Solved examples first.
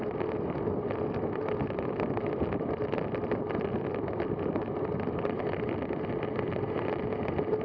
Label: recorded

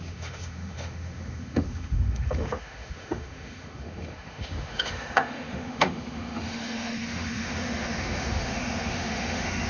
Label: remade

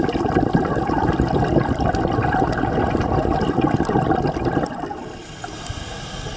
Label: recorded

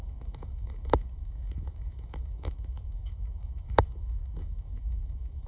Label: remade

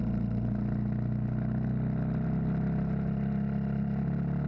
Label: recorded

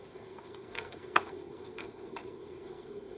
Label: remade